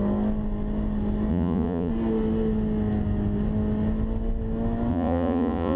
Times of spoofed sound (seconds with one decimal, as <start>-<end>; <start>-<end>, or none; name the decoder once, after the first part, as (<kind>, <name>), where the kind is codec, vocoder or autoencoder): 1.3-1.9 (vocoder, Vocos); 4.9-5.8